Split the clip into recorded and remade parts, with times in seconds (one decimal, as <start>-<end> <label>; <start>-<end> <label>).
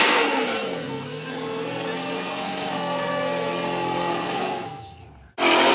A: 0.0-5.0 remade; 5.0-5.7 recorded